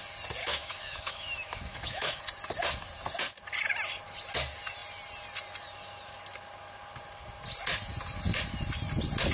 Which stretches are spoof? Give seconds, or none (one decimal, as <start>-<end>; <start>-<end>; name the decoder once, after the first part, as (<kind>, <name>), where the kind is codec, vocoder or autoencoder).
0.4-2.2 (autoencoder, DAC-VAE)